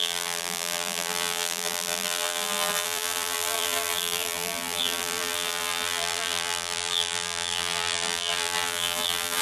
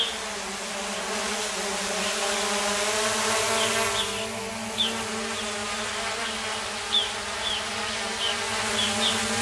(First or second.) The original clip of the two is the second